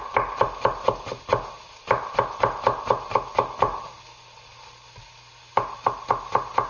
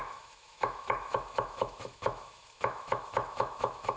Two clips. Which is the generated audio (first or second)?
second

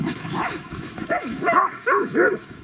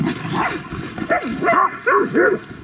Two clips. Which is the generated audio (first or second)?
first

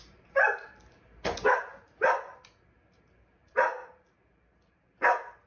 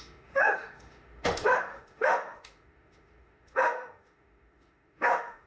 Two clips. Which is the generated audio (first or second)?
second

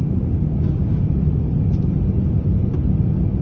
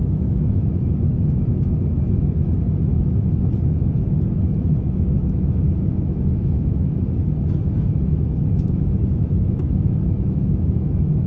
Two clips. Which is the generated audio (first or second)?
second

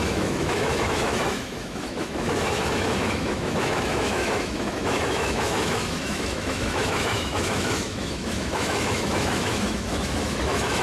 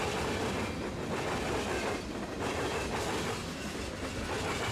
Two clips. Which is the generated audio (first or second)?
first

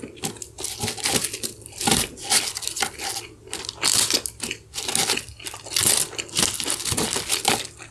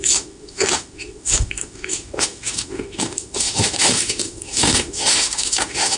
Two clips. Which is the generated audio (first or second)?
second